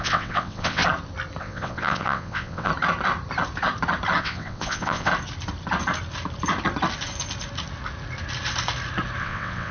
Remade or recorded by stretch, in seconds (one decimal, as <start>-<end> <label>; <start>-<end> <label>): 0.0-0.8 remade; 0.8-1.4 recorded; 1.4-2.7 remade; 2.7-4.2 recorded; 4.2-5.1 remade; 5.1-9.2 recorded; 9.2-9.7 remade